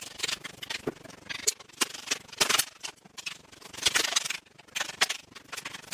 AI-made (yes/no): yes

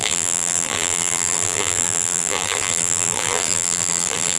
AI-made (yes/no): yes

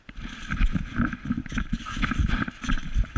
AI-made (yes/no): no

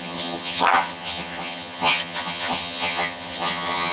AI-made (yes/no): yes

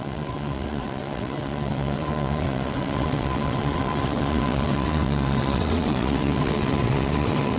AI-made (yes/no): yes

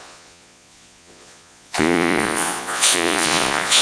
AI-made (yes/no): yes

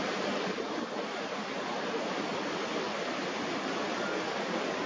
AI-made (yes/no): no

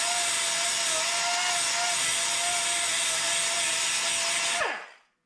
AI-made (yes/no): no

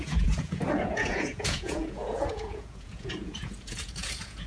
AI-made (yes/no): yes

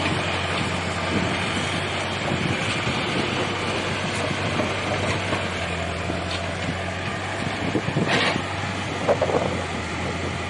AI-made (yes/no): no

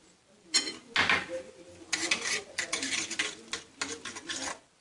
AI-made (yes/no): no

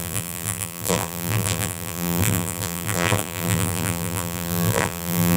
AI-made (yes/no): yes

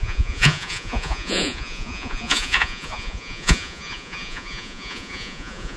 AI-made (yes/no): yes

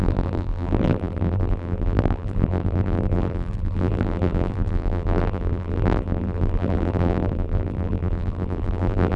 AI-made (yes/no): yes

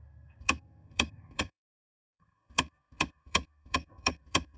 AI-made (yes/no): yes